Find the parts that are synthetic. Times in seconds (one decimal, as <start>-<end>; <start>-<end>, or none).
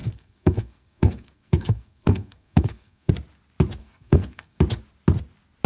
0.0-3.1; 3.8-4.6